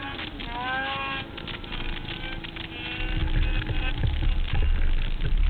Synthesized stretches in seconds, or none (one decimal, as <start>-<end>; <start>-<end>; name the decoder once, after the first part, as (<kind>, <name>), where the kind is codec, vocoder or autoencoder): none